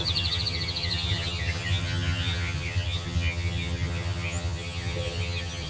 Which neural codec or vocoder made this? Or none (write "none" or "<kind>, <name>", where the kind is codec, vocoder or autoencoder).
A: vocoder, HiFi-GAN